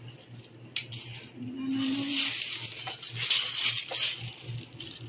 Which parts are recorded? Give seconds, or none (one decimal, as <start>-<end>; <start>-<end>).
0.0-5.1